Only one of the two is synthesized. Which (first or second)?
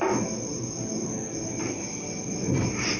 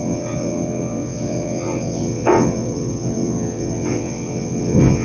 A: second